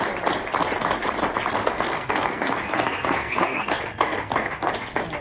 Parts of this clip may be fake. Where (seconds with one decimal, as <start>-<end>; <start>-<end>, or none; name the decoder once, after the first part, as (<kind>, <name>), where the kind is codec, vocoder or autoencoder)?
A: 1.6-4.7 (codec, SNAC)